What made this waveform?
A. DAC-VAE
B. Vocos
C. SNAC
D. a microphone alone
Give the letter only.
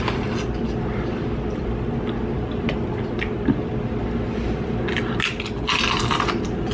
D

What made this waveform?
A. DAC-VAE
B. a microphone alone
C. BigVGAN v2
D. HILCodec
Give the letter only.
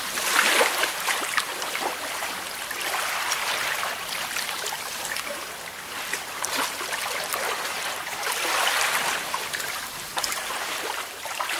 C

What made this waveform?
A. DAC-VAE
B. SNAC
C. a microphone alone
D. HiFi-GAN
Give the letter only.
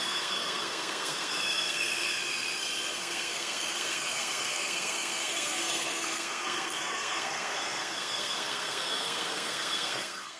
B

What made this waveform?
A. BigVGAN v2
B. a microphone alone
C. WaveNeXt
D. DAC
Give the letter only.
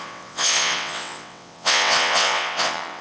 C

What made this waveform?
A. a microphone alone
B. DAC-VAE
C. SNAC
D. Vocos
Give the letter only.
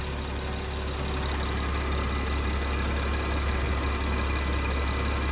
A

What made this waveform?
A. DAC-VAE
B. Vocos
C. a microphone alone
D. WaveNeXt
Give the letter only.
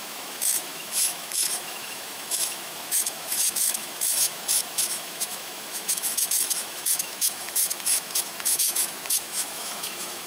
A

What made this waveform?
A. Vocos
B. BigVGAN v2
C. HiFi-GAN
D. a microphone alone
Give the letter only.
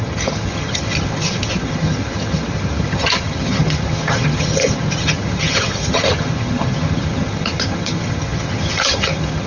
C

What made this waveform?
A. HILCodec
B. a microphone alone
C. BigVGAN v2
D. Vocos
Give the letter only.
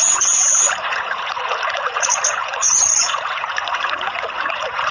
D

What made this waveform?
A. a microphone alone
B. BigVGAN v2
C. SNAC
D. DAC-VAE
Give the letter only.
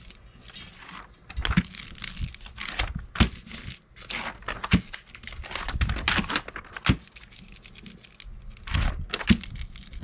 A